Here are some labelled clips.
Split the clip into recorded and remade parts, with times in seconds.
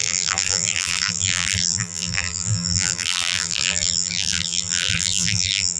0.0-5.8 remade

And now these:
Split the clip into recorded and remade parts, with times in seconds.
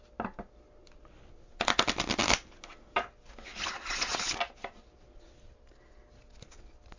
0.0-7.0 recorded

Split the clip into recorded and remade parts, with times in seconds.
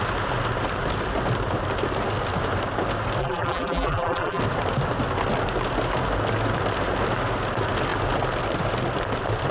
0.0-3.2 recorded; 3.2-4.4 remade; 4.4-9.5 recorded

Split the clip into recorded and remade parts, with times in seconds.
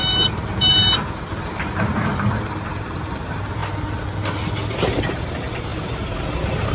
0.0-3.6 remade; 3.6-5.0 recorded; 5.0-6.7 remade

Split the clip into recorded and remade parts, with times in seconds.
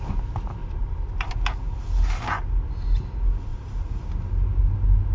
0.0-0.6 recorded; 0.6-1.3 remade; 1.3-3.5 recorded; 3.5-4.1 remade; 4.1-5.1 recorded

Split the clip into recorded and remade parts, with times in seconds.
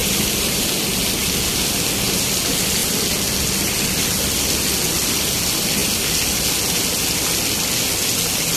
0.0-0.8 remade; 0.8-8.6 recorded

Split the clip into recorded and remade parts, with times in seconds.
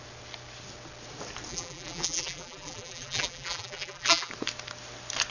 0.0-1.5 recorded; 1.5-4.3 remade; 4.3-5.3 recorded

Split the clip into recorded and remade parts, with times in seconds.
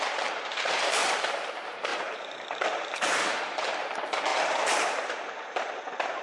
0.0-6.2 remade